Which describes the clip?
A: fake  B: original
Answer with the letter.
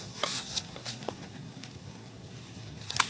A